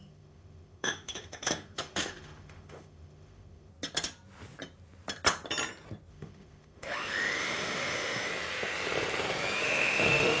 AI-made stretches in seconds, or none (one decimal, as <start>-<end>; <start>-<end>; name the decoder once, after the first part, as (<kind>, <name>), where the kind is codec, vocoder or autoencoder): 0.0-3.7 (autoencoder, DAC-VAE); 6.1-8.3; 9.6-10.4